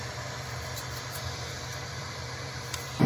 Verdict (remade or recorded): remade